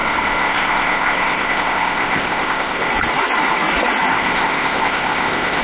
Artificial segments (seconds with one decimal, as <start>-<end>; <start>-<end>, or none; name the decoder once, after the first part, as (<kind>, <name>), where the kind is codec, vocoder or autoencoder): 0.0-2.9 (codec, ZipCodec); 4.1-5.6